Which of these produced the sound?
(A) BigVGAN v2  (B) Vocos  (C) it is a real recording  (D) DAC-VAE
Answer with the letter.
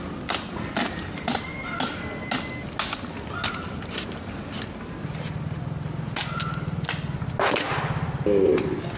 C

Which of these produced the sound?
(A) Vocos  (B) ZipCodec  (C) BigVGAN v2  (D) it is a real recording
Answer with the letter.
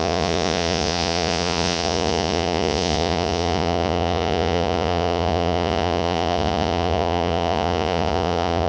A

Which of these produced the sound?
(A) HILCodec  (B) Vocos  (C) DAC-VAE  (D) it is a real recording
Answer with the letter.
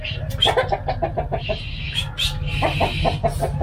D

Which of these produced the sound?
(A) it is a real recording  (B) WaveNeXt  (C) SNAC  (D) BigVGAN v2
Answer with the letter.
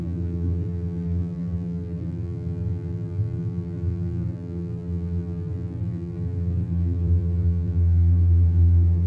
D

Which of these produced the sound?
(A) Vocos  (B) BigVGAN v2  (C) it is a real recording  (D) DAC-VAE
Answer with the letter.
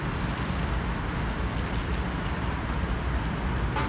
C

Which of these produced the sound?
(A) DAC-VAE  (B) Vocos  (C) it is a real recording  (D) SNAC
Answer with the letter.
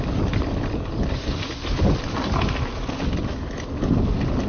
C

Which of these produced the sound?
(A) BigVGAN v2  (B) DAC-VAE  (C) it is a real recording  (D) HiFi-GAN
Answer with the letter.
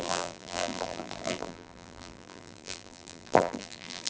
A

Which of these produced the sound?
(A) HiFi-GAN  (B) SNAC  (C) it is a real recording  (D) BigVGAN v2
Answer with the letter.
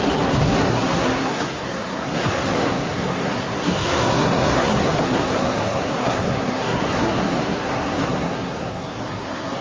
B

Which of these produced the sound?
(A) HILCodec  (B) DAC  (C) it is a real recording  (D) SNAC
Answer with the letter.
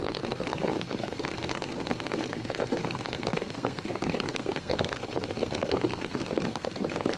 D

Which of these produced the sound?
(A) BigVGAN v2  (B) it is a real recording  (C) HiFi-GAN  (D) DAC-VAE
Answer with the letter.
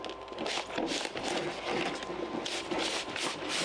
B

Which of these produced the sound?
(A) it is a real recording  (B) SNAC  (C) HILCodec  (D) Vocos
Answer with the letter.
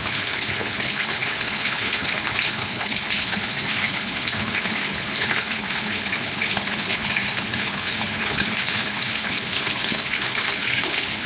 C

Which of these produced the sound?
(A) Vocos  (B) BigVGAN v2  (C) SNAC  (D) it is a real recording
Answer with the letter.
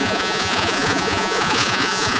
A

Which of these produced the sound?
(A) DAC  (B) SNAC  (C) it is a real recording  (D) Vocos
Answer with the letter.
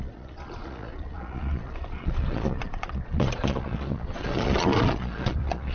D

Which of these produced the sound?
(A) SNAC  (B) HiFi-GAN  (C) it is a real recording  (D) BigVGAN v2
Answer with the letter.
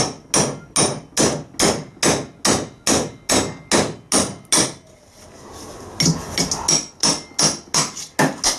C